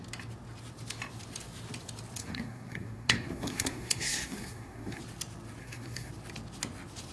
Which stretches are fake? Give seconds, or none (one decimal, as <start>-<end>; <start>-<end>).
2.2-5.0; 5.6-6.1